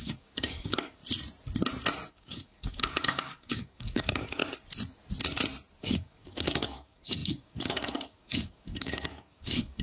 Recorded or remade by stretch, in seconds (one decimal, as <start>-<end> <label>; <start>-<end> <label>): 0.0-1.0 remade; 1.0-2.1 recorded; 2.1-4.4 remade; 4.4-5.8 recorded; 5.8-9.8 remade